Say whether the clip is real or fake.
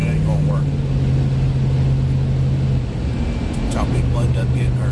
real